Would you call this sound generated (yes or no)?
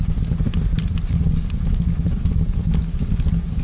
no